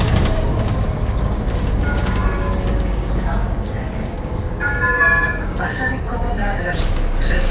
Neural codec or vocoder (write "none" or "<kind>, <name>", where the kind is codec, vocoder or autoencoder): codec, DAC